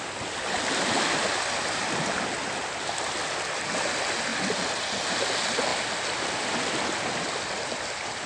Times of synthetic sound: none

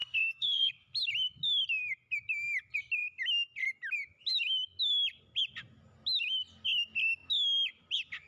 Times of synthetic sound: 0.0-0.7 (codec, SNAC)

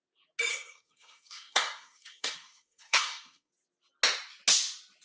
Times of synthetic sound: 0.5-3.5 (codec, SNAC)

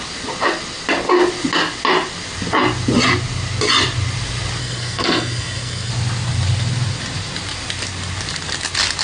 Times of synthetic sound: 4.6-5.9 (codec, SNAC)

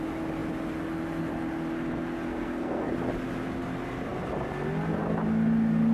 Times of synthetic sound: 2.3-2.9 (codec, SNAC)